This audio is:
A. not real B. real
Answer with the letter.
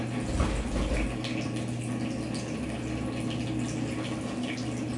B